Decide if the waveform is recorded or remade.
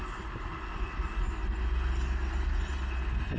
recorded